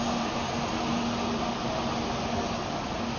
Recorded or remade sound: recorded